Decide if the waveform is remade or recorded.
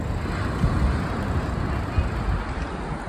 recorded